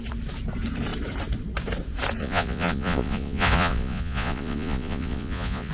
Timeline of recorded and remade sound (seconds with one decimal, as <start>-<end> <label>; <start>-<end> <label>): 0.0-2.2 recorded; 2.2-5.7 remade